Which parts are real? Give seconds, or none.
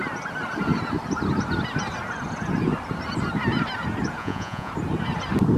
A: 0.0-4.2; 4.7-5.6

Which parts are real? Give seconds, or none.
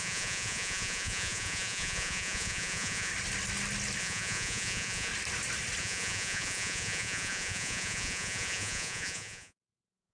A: 3.1-4.0; 5.1-5.8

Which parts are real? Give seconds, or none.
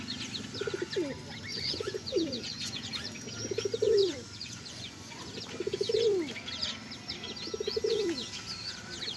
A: 0.0-1.5; 2.9-4.0; 5.2-9.2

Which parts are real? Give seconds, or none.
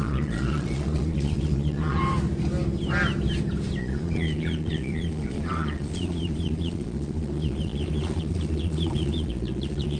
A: 2.0-3.8